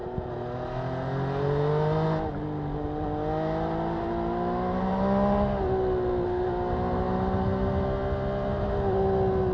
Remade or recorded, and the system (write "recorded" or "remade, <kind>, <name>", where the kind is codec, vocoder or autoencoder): recorded